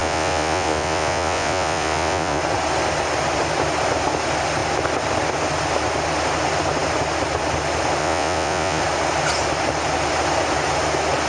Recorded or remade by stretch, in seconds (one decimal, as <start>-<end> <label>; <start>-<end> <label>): 0.0-2.4 remade; 2.4-8.0 recorded; 8.0-8.8 remade; 8.8-11.3 recorded